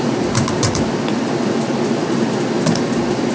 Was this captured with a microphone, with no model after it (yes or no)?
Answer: yes